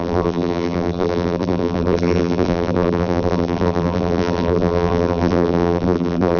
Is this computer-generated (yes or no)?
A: yes